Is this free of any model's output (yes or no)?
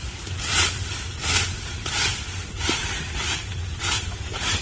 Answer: yes